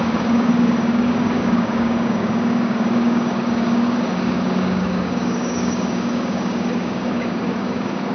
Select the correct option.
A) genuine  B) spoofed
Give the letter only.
B